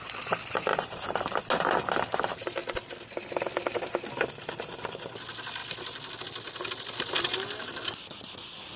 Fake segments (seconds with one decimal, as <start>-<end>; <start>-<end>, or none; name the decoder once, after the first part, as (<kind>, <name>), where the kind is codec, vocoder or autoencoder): 0.7-1.4 (vocoder, BigVGAN v2); 5.6-6.2